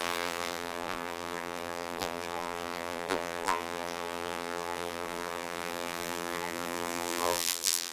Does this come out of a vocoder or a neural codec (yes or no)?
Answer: yes